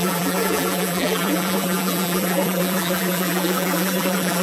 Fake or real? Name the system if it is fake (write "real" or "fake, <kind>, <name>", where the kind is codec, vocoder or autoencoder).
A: fake, vocoder, BigVGAN v2